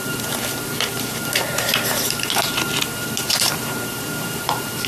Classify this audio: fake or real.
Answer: fake